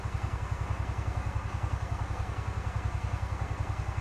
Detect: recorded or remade remade